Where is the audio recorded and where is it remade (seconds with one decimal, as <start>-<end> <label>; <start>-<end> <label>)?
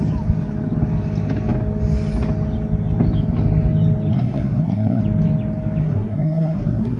0.0-4.1 recorded; 4.1-5.0 remade; 5.0-5.8 recorded; 5.8-7.0 remade